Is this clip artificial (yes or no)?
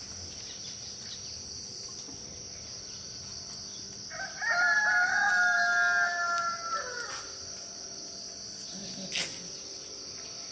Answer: no